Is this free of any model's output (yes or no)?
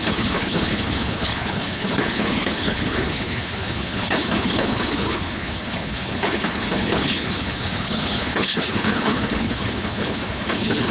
no